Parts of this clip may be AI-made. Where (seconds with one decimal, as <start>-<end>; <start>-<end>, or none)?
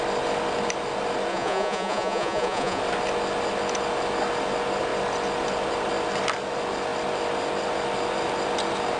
1.3-2.8